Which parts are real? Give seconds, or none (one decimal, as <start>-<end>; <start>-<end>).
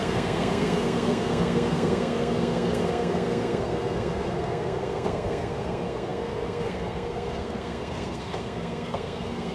none